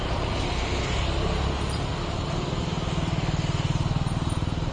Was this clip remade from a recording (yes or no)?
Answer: no